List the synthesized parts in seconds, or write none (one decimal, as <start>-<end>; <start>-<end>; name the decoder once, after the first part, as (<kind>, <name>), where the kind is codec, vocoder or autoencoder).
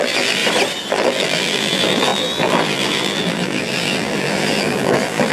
0.0-0.4 (vocoder, BigVGAN v2); 0.9-5.3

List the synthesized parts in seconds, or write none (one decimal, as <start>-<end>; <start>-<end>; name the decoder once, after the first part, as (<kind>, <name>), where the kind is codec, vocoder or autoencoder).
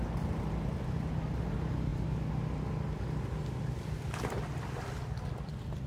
none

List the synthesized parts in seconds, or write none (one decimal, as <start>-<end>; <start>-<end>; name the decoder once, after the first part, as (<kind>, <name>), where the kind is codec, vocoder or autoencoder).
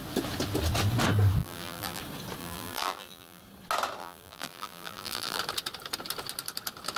1.4-2.0 (vocoder, BigVGAN v2); 2.4-3.4; 4.0-5.4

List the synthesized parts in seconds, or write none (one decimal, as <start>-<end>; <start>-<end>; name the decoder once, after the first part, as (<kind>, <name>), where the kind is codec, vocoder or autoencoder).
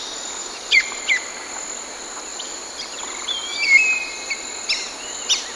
0.4-1.0 (vocoder, BigVGAN v2); 2.3-3.0; 3.5-4.3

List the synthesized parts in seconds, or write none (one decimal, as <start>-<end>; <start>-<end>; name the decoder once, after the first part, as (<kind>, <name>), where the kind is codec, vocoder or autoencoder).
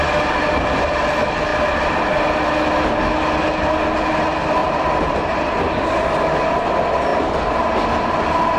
4.6-6.0 (vocoder, BigVGAN v2); 7.1-7.7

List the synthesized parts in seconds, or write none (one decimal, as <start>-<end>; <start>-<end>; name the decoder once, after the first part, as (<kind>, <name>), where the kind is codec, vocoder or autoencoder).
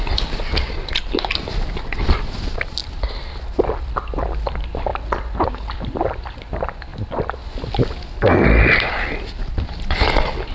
0.0-4.9 (vocoder, BigVGAN v2); 6.5-6.9; 9.4-10.5